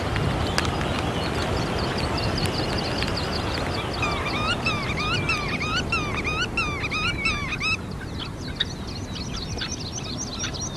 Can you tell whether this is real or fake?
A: real